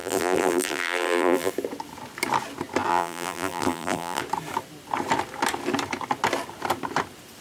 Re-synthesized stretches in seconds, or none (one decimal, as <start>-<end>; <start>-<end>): 0.0-1.5; 2.9-4.2

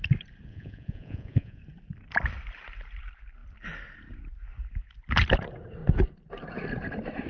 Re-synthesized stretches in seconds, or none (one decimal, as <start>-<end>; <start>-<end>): 0.5-1.6